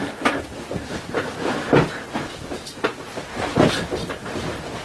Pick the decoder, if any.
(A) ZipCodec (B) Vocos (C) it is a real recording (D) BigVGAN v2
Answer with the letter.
C